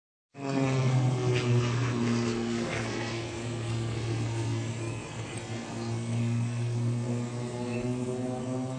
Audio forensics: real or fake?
fake